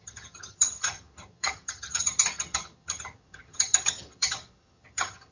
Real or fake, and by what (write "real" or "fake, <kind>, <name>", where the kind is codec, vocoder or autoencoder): fake, vocoder, HiFi-GAN